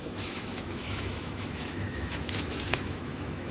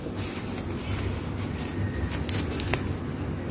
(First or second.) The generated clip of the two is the first